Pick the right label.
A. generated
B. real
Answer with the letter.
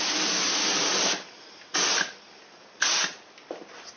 B